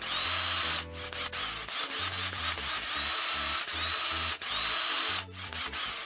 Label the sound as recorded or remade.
recorded